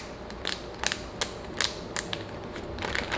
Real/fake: real